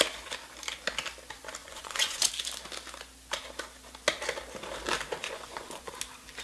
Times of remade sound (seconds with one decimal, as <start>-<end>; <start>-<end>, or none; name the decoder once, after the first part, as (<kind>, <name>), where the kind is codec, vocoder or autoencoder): 1.6-2.3 (vocoder, Vocos); 5.2-5.9